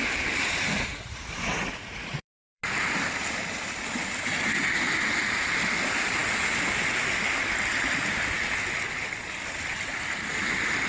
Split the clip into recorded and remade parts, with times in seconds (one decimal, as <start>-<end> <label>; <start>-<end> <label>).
0.0-0.4 recorded; 0.4-2.6 remade; 2.6-10.9 recorded